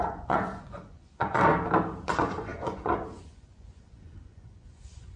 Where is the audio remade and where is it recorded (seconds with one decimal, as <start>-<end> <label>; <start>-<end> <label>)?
0.0-1.5 remade; 1.5-2.0 recorded; 2.0-5.2 remade